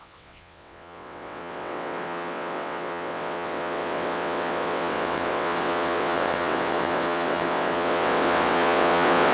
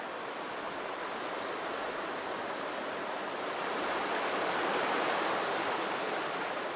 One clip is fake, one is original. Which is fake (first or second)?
first